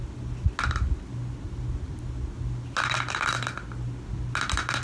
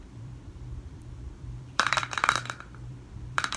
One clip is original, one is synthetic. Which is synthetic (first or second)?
second